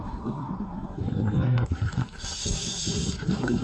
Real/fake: fake